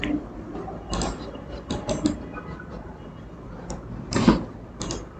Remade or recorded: recorded